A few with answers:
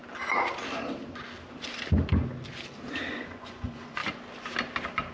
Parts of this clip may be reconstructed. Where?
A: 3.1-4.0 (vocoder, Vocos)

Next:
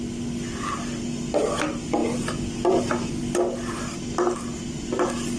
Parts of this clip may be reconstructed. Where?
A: none

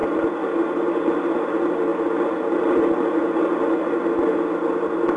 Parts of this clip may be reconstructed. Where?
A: none

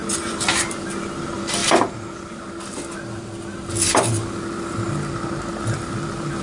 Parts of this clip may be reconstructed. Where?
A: none